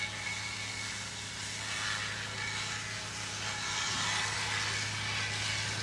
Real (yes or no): yes